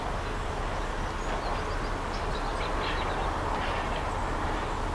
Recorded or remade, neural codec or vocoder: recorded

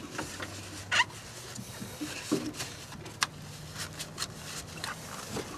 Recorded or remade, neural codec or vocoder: recorded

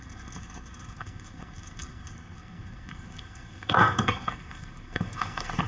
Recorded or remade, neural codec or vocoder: remade, codec, SNAC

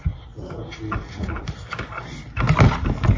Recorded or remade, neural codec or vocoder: recorded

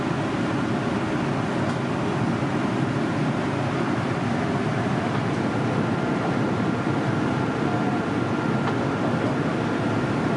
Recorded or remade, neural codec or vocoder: recorded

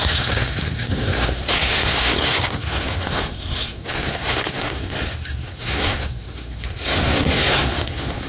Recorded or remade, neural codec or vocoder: remade, codec, SNAC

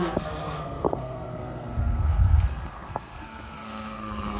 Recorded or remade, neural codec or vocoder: remade, codec, SNAC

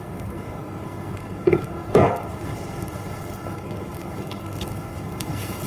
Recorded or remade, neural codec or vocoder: remade, codec, SNAC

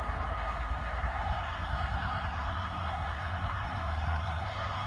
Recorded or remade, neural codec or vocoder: remade, codec, SNAC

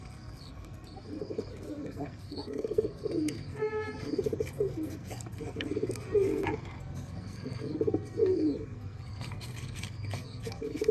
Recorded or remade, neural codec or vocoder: remade, codec, SNAC